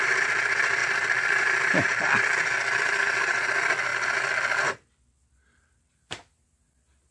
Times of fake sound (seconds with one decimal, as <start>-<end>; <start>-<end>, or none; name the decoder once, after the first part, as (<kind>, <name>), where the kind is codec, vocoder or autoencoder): none